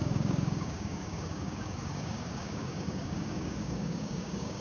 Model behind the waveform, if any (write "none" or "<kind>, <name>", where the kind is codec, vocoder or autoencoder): codec, DAC